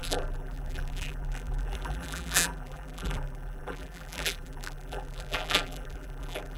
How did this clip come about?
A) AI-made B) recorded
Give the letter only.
A